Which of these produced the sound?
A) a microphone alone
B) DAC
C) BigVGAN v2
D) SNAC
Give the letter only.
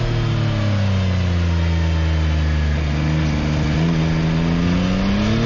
A